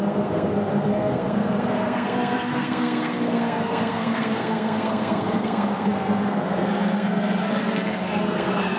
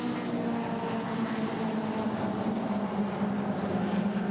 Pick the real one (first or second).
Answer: second